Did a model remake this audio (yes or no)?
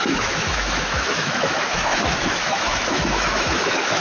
yes